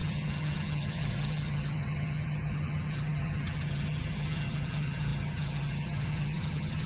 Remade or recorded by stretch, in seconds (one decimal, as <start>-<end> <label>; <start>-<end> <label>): 0.0-6.9 remade